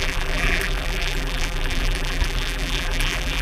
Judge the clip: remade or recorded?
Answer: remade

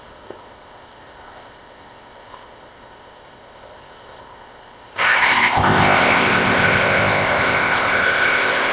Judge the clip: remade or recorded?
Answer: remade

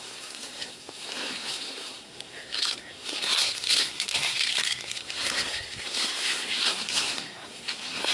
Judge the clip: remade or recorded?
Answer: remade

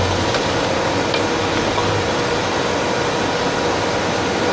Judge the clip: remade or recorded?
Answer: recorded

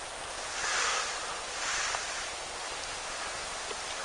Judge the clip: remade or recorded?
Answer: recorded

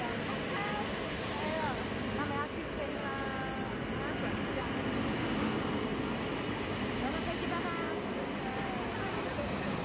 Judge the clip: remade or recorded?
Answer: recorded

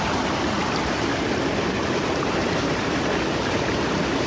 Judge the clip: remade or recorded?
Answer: recorded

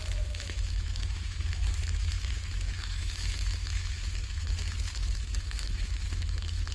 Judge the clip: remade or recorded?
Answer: remade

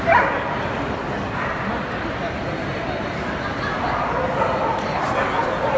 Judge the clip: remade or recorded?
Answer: recorded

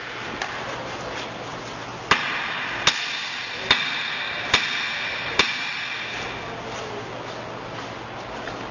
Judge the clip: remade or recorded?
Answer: recorded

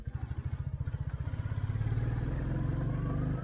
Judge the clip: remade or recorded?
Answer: recorded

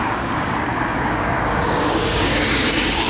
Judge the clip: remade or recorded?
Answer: remade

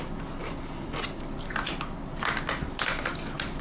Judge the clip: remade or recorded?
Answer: recorded